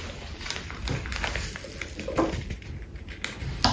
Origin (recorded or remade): recorded